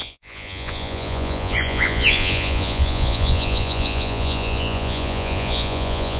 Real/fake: fake